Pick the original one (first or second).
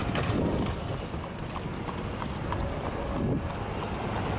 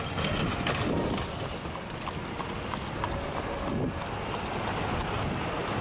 second